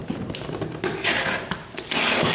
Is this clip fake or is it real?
real